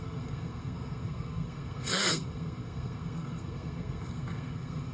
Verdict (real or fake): fake